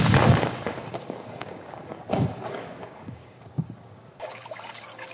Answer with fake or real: fake